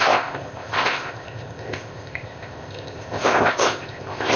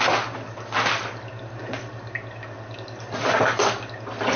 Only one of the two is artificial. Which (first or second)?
first